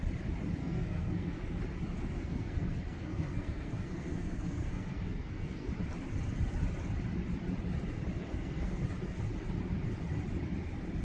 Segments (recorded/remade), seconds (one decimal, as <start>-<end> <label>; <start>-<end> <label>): 0.0-0.6 recorded; 0.6-1.6 remade; 1.6-2.0 recorded; 2.0-5.7 remade; 5.7-8.2 recorded; 8.2-8.8 remade; 8.8-11.0 recorded